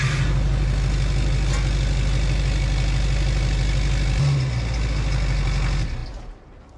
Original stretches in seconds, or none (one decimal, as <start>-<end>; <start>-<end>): 0.0-6.8